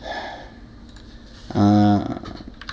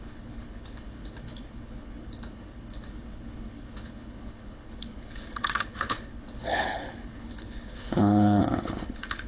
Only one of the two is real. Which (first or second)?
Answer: first